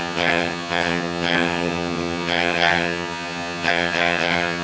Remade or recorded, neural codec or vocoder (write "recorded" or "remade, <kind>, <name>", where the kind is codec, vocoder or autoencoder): remade, vocoder, HiFi-GAN